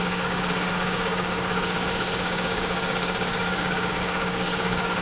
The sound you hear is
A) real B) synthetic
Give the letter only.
B